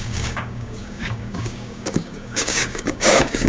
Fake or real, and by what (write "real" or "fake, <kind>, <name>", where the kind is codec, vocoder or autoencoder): fake, codec, DAC